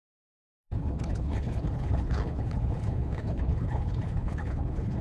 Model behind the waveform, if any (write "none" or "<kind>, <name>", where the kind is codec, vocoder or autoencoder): codec, HILCodec